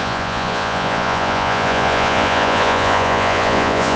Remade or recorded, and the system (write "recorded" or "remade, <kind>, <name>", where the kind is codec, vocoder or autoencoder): remade, vocoder, Vocos